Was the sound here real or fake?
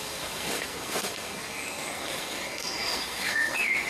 fake